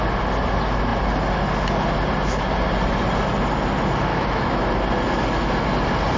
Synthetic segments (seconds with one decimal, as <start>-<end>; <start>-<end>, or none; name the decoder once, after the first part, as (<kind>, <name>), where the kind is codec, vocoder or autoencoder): 4.1-4.6 (autoencoder, DAC-VAE)